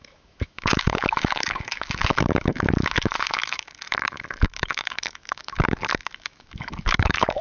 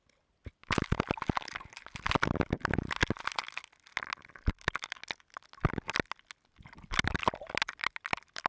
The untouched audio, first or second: second